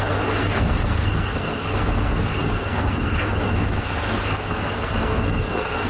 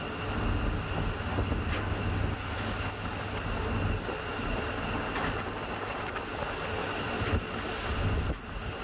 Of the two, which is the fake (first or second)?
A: first